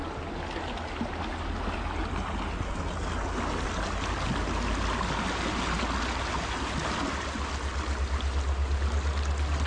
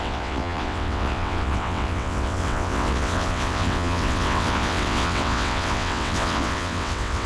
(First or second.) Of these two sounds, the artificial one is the second